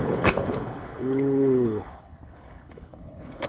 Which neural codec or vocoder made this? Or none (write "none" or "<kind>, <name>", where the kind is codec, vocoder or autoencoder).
codec, HILCodec